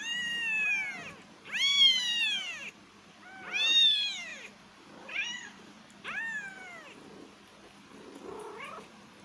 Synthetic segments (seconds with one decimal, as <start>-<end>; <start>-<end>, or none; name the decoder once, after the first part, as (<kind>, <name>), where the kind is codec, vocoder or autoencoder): 4.3-6.2 (vocoder, BigVGAN v2)